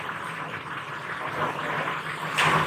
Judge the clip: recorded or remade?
recorded